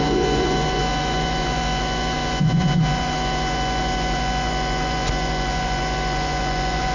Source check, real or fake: fake